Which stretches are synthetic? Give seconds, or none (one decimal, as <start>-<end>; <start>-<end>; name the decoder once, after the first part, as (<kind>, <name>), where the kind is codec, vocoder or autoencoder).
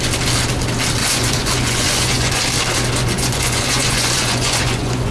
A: 1.0-2.4 (vocoder, Vocos); 3.0-5.1